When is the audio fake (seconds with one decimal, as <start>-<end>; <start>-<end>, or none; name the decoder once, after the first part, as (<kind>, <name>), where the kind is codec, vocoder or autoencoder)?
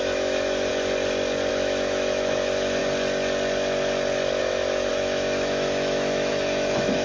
0.0-0.7 (autoencoder, DAC-VAE); 1.5-2.8; 4.4-7.0